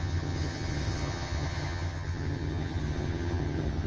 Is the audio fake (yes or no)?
yes